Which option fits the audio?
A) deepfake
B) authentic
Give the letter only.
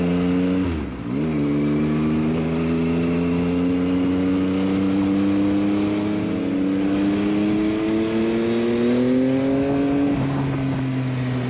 B